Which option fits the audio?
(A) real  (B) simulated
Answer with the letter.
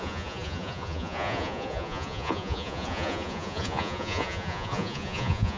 B